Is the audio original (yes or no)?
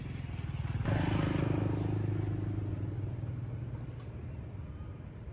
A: yes